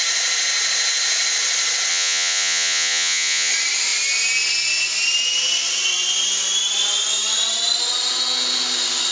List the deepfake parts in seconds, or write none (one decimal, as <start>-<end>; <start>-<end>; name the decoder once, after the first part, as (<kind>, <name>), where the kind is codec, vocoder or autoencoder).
1.9-3.5 (vocoder, Vocos)